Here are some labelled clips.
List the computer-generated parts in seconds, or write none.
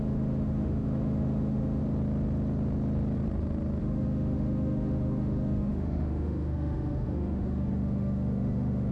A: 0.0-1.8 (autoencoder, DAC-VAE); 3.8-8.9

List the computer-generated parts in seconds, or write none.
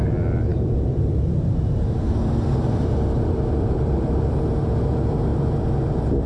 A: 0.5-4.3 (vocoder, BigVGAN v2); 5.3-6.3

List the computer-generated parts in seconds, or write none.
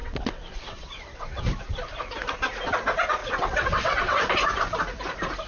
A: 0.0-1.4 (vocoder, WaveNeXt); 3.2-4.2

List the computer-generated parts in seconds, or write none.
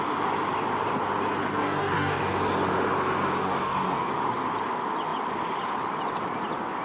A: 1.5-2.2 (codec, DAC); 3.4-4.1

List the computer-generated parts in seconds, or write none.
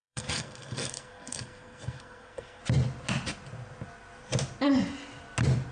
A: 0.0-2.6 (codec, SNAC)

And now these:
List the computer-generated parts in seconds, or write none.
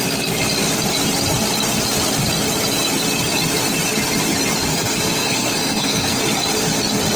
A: 4.7-6.2 (codec, SNAC)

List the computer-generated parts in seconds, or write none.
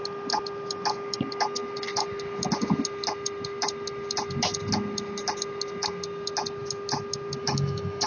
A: 7.4-8.1 (autoencoder, DAC-VAE)